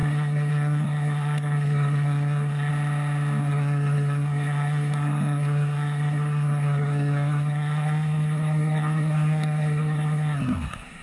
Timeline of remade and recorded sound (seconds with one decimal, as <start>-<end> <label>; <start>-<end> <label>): 0.0-2.7 remade; 2.7-3.4 recorded; 3.4-11.0 remade